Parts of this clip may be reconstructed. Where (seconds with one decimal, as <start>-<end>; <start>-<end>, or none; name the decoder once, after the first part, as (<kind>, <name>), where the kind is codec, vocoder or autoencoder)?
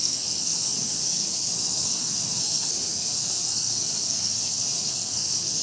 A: 0.0-5.6 (codec, SNAC)